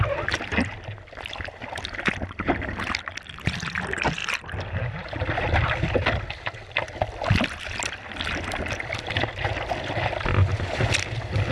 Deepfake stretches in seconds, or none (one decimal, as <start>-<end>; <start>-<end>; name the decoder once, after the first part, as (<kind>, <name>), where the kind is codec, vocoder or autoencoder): none